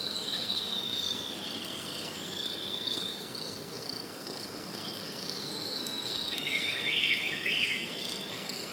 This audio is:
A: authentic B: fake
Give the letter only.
B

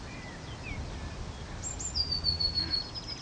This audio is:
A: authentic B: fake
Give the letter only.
A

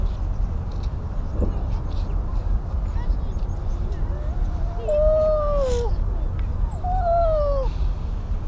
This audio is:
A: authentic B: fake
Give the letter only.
A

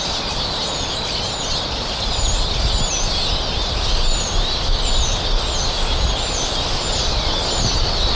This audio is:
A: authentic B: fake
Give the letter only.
A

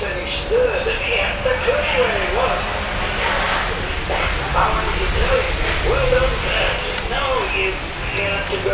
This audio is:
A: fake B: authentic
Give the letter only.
B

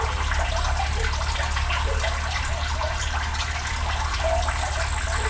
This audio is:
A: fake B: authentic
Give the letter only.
B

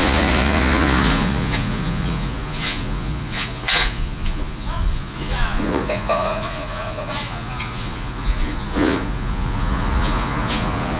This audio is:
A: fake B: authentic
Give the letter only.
A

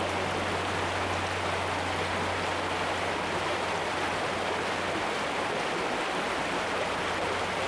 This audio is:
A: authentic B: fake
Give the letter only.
A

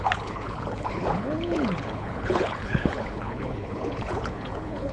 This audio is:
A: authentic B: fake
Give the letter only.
B